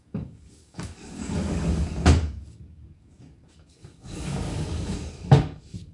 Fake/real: fake